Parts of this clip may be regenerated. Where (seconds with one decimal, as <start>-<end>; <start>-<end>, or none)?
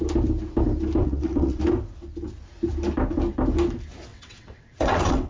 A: 1.0-1.6; 4.1-5.3